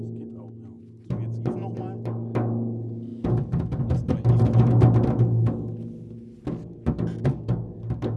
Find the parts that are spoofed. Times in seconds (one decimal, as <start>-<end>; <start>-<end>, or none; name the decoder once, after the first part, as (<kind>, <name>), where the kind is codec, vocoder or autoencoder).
none